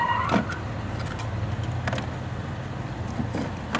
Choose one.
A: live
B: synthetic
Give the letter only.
A